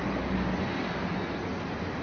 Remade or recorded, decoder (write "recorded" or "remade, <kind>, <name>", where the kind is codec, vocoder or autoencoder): recorded